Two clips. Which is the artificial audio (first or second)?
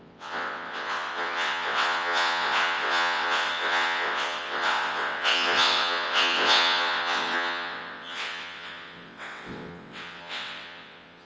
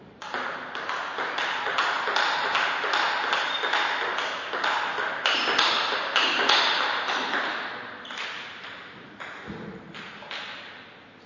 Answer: first